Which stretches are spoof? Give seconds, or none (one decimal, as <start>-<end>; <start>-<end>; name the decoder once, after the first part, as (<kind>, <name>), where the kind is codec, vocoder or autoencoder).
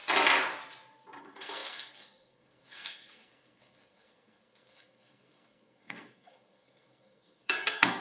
1.2-8.0 (codec, SNAC)